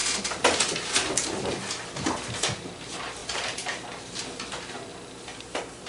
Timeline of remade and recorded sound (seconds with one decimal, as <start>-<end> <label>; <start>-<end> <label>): 0.0-3.2 recorded; 3.2-4.2 remade; 4.2-4.9 recorded; 4.9-5.9 remade